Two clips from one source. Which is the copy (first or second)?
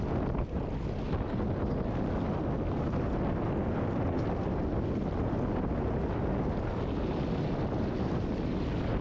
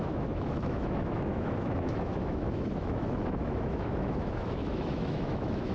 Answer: second